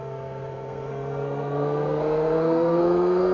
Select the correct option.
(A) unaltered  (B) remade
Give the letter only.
B